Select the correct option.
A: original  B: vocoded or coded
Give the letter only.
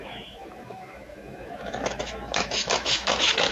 B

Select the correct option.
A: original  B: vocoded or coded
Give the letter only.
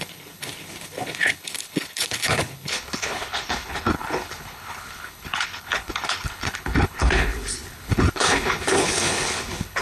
B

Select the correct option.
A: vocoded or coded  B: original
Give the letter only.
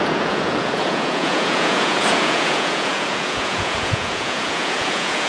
A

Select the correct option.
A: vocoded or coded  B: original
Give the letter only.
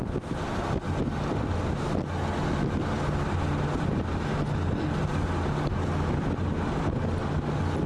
B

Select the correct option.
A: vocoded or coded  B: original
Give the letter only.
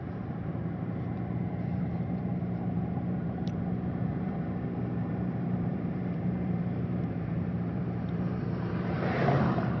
A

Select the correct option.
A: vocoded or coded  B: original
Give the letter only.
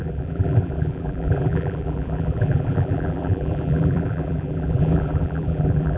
A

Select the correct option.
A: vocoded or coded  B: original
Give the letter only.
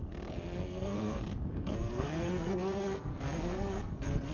A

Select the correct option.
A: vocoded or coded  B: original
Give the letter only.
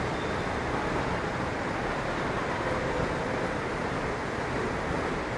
B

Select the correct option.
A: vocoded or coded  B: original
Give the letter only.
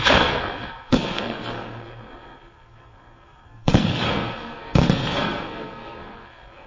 A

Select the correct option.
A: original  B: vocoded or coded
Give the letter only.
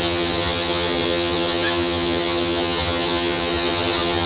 B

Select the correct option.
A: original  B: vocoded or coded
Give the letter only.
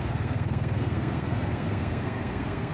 B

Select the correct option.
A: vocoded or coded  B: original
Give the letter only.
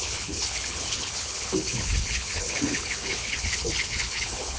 A